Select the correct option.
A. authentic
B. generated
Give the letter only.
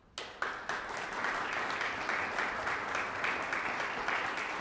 A